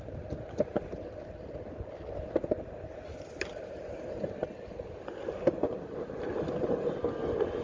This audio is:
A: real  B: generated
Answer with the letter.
A